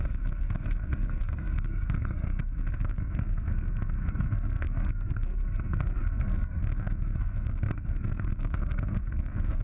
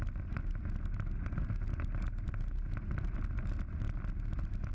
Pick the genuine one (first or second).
second